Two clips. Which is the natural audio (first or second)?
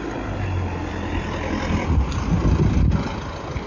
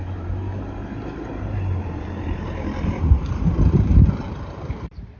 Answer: first